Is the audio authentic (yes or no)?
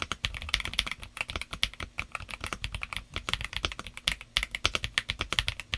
yes